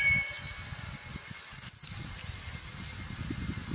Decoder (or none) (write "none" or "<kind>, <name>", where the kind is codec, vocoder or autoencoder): none